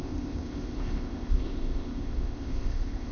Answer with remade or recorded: remade